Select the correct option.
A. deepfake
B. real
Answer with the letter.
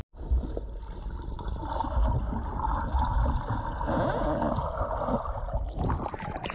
B